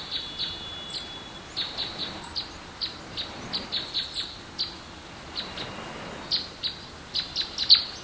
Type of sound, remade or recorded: recorded